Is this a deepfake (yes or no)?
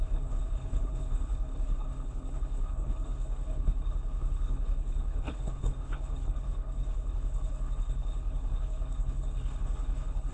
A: yes